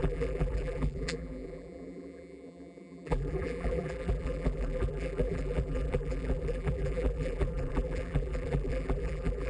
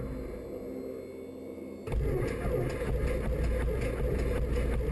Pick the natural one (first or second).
second